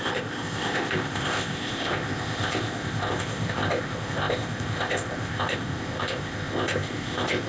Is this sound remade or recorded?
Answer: remade